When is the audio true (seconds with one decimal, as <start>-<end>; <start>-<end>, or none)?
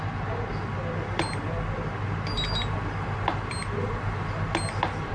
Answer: 0.0-5.1